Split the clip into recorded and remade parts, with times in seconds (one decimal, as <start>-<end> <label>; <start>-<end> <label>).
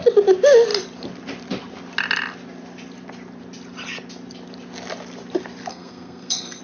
0.0-5.7 recorded; 5.7-6.6 remade